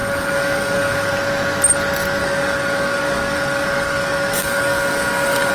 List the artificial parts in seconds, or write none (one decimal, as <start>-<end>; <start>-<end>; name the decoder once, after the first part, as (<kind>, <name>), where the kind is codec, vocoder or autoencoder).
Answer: 0.0-1.1 (codec, DAC); 2.2-5.5